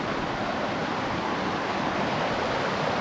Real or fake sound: real